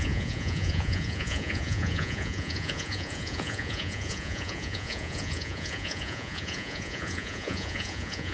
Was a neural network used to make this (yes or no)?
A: yes